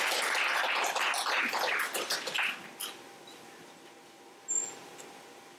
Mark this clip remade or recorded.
recorded